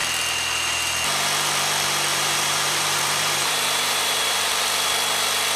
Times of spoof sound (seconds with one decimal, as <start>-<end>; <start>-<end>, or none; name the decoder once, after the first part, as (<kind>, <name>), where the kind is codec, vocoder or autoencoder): 2.1-4.5 (vocoder, BigVGAN v2)